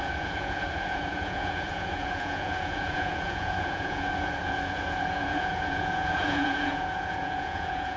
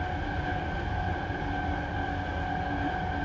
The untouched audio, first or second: second